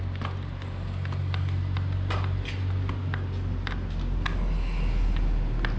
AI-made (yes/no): no